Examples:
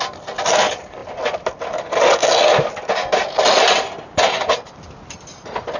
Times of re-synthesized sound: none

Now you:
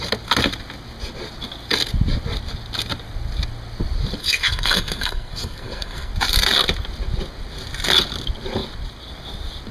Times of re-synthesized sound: 4.2-6.1

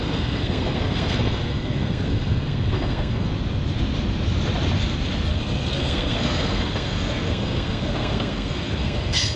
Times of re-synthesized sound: 0.0-3.3; 5.3-9.4

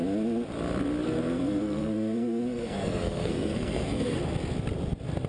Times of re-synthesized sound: 1.0-4.2

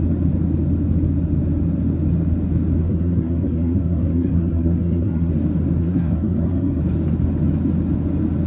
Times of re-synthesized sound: 2.8-5.3; 5.8-6.8

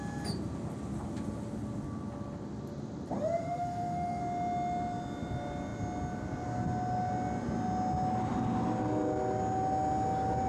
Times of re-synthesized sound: 3.4-4.2

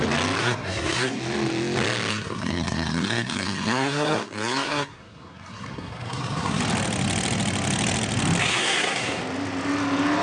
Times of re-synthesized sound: 0.4-1.2; 2.1-6.6; 8.4-9.2

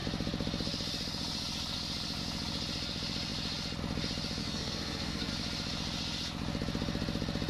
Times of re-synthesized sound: 4.4-5.3